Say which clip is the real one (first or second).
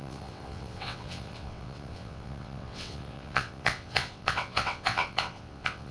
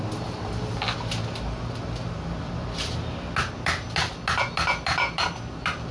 second